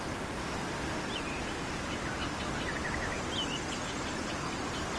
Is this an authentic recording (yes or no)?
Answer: yes